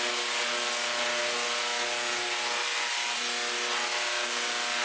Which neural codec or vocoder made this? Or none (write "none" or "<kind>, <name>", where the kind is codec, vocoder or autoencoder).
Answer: none